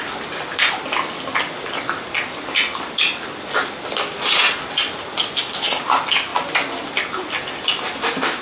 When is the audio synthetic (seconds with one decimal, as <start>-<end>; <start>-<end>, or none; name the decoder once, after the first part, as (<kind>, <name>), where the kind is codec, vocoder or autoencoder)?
none